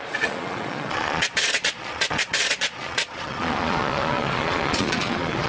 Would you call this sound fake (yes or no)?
yes